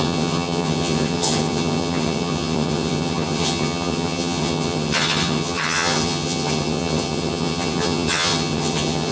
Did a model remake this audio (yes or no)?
yes